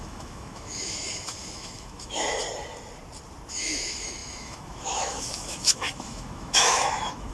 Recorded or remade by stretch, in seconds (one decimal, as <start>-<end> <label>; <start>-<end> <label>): 0.0-2.4 remade; 2.4-3.5 recorded; 3.5-7.3 remade